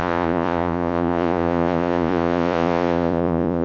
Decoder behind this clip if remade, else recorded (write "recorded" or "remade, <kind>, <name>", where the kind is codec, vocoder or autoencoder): remade, vocoder, Vocos